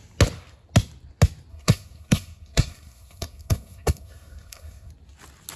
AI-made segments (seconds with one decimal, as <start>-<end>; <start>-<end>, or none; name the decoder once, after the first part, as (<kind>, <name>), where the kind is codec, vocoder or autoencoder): 1.5-4.9 (codec, SNAC)